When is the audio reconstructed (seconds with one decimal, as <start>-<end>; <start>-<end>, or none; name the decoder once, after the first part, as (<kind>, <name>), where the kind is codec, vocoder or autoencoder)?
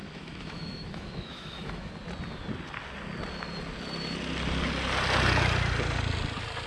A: 0.0-1.9 (autoencoder, DAC-VAE)